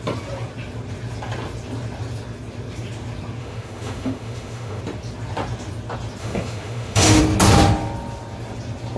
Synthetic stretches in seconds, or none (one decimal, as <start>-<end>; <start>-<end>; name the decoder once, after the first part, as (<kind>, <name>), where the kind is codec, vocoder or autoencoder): 3.4-4.8 (autoencoder, DAC-VAE); 6.2-7.2